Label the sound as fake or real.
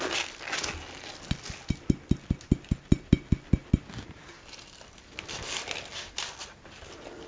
real